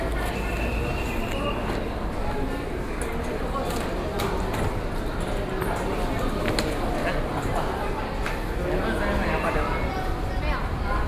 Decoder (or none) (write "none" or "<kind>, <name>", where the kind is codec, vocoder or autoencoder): none